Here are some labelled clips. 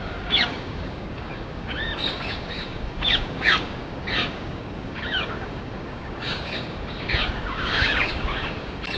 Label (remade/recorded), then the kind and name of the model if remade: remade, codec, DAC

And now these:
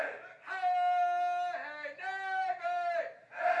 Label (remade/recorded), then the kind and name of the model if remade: recorded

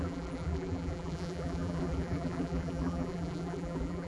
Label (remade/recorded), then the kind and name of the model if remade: remade, vocoder, BigVGAN v2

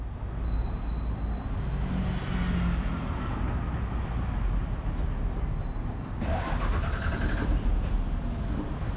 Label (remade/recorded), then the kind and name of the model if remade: recorded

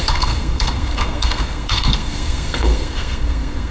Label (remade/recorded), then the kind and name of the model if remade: remade, codec, SNAC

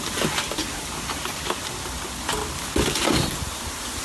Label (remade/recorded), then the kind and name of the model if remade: recorded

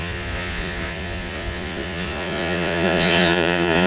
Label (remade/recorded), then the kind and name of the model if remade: remade, vocoder, Vocos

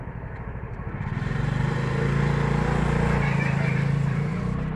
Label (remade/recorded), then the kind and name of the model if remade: remade, vocoder, BigVGAN v2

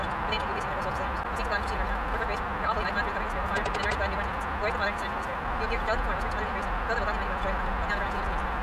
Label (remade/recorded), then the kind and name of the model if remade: recorded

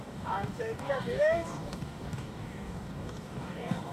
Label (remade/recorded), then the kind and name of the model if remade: remade, codec, DAC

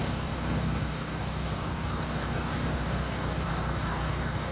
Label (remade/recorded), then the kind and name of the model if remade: remade, codec, DAC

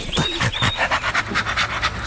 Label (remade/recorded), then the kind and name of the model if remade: recorded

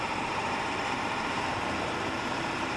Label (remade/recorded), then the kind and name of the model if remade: remade, vocoder, BigVGAN v2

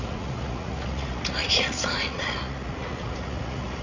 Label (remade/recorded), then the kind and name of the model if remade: remade, vocoder, Vocos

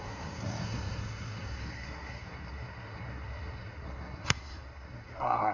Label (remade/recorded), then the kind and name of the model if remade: remade, codec, SNAC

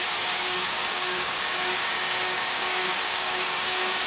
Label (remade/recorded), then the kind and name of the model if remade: remade, codec, DAC